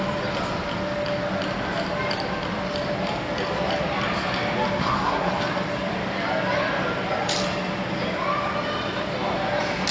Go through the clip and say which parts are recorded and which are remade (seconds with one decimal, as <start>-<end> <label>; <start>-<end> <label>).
0.0-4.8 recorded; 4.8-5.3 remade; 5.3-9.9 recorded